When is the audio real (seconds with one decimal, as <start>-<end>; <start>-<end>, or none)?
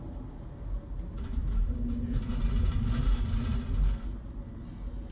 0.0-5.1